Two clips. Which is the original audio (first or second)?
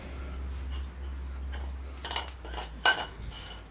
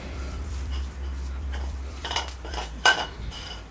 first